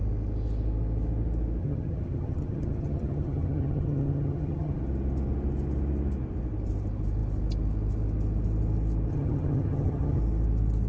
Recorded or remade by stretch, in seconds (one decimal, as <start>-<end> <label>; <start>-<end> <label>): 0.0-1.6 recorded; 1.6-4.8 remade; 4.8-9.1 recorded; 9.1-10.2 remade; 10.2-10.9 recorded